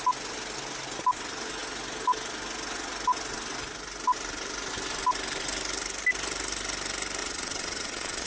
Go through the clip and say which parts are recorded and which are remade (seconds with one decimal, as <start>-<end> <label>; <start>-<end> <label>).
0.0-7.2 recorded; 7.2-8.3 remade